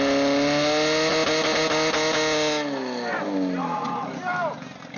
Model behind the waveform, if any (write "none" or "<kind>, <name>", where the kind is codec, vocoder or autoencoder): none